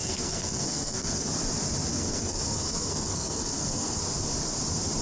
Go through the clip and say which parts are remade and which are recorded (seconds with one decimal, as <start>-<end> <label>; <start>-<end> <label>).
0.0-1.3 remade; 1.3-1.9 recorded; 1.9-4.0 remade; 4.0-5.0 recorded